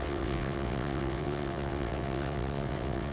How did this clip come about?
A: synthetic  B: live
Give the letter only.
A